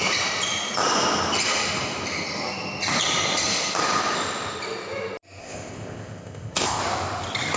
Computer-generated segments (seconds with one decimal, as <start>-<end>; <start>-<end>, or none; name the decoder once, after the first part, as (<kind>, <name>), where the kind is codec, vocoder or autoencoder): 5.4-6.8 (codec, ZipCodec)

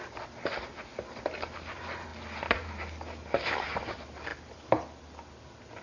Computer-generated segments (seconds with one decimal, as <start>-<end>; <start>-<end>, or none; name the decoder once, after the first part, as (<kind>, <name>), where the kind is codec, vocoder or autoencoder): none

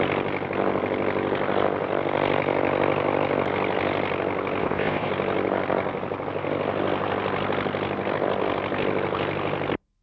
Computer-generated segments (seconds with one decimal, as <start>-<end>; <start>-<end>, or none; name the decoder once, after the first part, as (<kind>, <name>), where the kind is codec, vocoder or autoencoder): 4.6-5.1 (codec, ZipCodec)